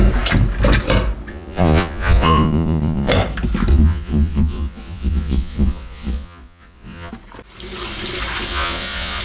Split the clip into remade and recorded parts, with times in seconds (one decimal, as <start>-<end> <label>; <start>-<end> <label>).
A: 0.0-1.3 recorded; 1.3-3.1 remade; 3.1-3.7 recorded; 3.7-7.1 remade; 7.1-8.5 recorded; 8.5-9.2 remade